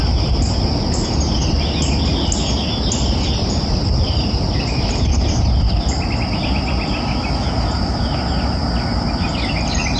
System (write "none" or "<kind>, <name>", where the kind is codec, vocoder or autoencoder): none